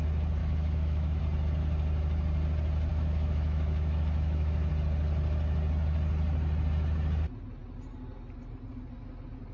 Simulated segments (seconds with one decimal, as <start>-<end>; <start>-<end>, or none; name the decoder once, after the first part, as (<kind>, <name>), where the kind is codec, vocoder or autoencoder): 0.4-1.2 (autoencoder, DAC-VAE); 2.9-4.7